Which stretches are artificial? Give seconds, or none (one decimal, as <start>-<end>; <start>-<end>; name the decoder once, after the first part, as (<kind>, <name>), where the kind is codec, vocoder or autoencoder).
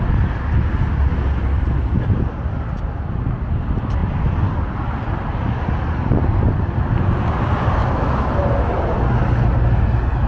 none